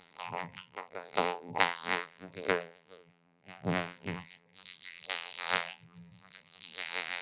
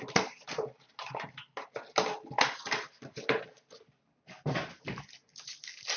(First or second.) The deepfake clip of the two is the first